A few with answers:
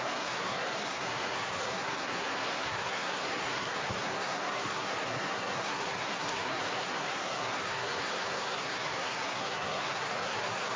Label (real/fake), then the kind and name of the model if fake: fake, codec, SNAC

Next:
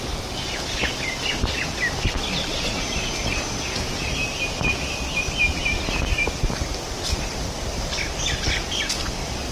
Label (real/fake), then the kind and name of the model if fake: real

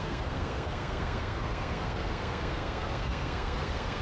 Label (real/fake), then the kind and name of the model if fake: fake, codec, SNAC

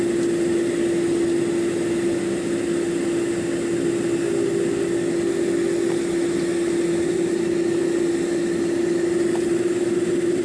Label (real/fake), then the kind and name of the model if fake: real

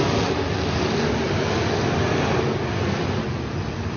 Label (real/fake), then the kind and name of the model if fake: real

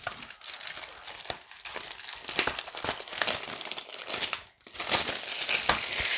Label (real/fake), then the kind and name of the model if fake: real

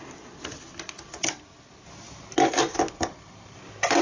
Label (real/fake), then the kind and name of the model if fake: real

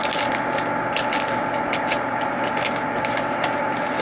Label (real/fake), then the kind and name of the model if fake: real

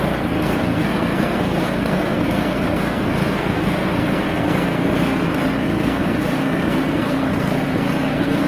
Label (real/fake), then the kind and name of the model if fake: fake, codec, SNAC